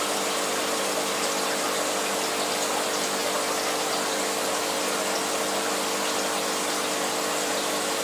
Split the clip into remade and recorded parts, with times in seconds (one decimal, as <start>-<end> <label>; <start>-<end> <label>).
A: 0.0-8.0 recorded